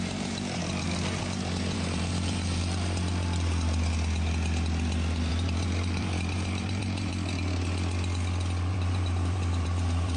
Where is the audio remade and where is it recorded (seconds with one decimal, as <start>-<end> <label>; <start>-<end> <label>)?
0.0-0.6 remade; 0.6-1.2 recorded; 1.2-2.6 remade; 2.6-5.3 recorded; 5.3-7.1 remade; 7.1-8.7 recorded; 8.7-10.2 remade